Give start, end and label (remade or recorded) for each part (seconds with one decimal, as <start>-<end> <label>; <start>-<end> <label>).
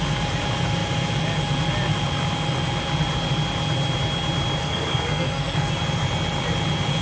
0.0-4.6 recorded; 4.6-5.7 remade; 5.7-7.0 recorded